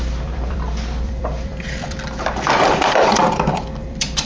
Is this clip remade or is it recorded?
remade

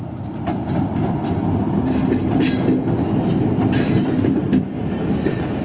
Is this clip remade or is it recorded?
recorded